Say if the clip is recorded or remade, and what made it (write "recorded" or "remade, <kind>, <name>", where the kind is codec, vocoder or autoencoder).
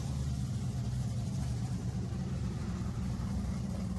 remade, vocoder, BigVGAN v2